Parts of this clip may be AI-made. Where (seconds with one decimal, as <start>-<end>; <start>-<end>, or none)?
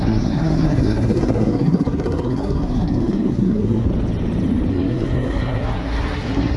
0.0-3.9; 4.7-6.6